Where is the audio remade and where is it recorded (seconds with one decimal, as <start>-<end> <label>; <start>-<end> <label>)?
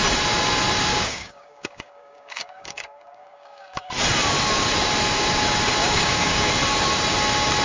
0.0-0.9 recorded; 0.9-3.9 remade; 3.9-5.8 recorded; 5.8-6.5 remade; 6.5-7.6 recorded